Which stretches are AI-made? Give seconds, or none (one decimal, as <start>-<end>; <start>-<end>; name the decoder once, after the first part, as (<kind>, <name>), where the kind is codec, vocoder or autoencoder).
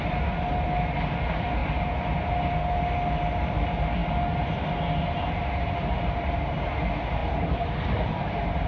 none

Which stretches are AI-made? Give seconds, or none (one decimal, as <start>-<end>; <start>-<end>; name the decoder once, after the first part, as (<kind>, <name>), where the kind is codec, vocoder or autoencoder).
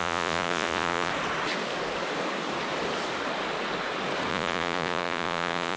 0.0-1.1 (vocoder, Vocos); 4.3-5.8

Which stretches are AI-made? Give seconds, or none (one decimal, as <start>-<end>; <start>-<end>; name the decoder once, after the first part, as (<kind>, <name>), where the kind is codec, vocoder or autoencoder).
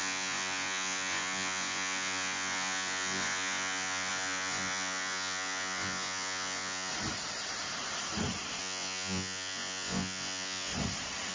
0.0-6.9 (vocoder, Vocos); 8.6-10.7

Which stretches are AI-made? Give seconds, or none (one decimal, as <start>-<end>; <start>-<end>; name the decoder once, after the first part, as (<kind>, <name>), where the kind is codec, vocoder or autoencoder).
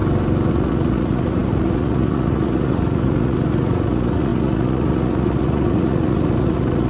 0.5-6.9 (vocoder, Vocos)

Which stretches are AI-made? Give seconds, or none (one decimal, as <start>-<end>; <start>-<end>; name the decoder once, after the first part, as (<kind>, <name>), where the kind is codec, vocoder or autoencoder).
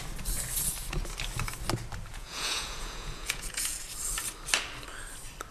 2.1-3.8 (vocoder, Vocos)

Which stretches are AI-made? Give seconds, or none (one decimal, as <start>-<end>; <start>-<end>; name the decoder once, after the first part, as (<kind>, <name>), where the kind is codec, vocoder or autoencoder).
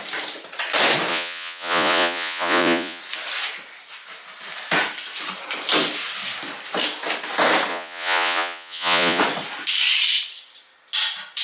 1.1-3.0 (vocoder, Vocos); 7.7-9.2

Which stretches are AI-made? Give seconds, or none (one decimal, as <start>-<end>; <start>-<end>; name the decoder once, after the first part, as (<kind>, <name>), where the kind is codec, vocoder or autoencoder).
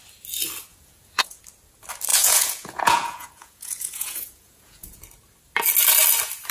0.7-1.4 (vocoder, Vocos); 2.1-5.0